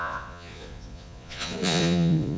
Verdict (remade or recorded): remade